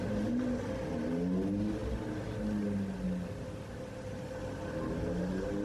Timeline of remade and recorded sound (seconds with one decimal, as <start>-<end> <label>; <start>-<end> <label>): 0.0-5.6 recorded